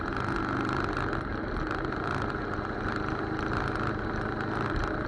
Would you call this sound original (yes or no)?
yes